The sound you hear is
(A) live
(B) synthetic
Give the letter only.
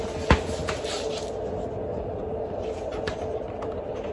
A